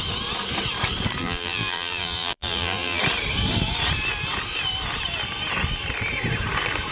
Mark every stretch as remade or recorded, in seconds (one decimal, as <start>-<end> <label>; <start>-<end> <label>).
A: 0.0-1.2 recorded; 1.2-3.0 remade; 3.0-6.9 recorded